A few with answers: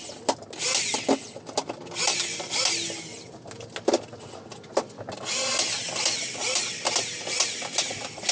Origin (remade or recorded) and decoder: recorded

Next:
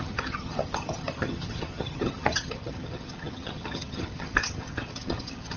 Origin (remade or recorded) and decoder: remade, vocoder, HiFi-GAN